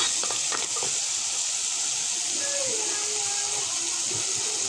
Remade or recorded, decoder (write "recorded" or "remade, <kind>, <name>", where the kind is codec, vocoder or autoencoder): recorded